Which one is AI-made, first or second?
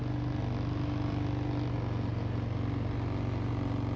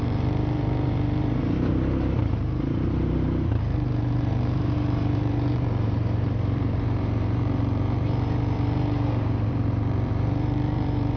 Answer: second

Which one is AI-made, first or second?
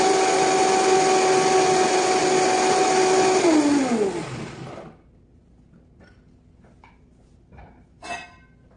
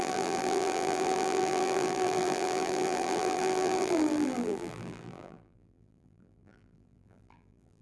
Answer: second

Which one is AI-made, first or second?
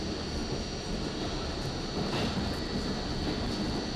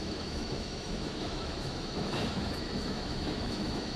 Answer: second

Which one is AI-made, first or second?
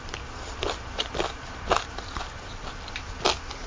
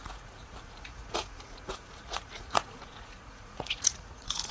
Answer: second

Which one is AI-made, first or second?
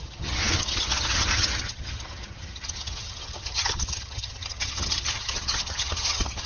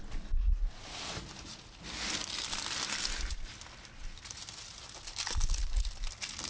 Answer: first